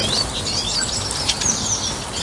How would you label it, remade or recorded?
recorded